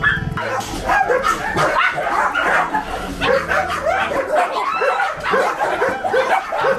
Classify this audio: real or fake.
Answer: real